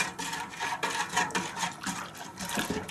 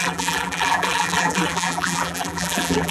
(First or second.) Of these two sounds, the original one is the first